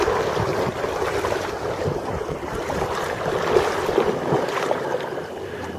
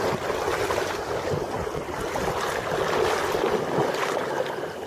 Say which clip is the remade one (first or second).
first